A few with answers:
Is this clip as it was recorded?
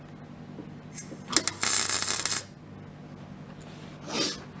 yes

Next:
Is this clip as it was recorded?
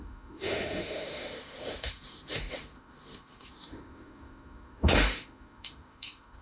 no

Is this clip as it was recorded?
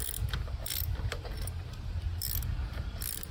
yes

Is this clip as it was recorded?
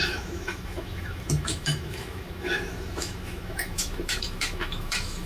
no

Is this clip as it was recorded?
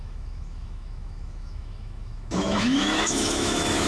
no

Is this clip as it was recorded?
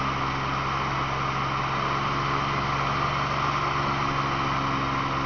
yes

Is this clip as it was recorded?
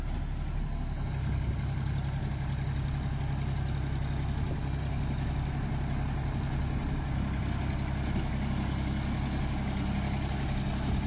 yes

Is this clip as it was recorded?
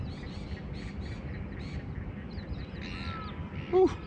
yes